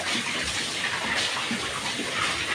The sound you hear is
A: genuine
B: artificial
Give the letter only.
A